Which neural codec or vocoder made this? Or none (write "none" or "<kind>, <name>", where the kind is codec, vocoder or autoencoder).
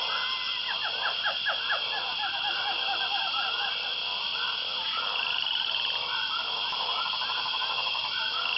none